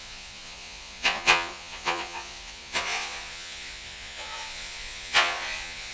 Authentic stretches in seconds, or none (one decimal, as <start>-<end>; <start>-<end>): none